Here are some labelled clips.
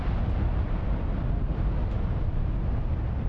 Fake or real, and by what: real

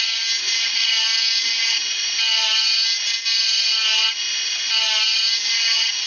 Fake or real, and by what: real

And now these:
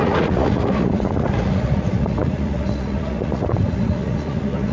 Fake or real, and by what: fake, vocoder, Vocos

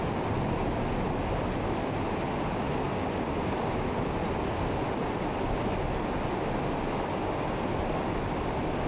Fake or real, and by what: real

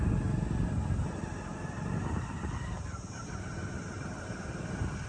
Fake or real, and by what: real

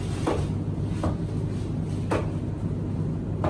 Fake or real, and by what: real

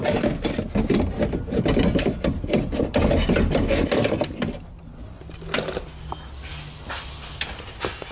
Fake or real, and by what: real